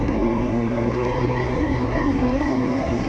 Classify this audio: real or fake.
fake